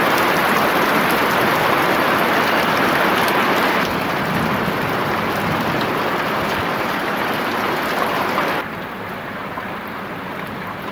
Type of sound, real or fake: real